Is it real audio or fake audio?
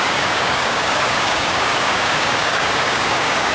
fake